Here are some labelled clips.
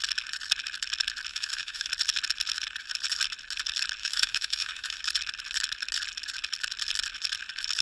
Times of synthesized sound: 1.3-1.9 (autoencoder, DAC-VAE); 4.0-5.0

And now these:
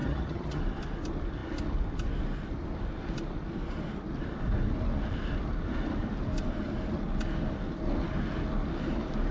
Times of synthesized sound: 0.0-0.6 (vocoder, HiFi-GAN)

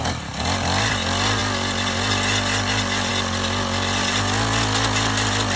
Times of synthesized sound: none